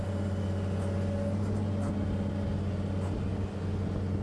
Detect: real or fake real